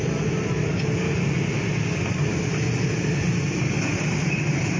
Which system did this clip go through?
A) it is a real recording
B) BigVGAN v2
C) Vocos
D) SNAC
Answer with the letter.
A